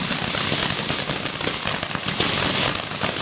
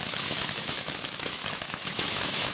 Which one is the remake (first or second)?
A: second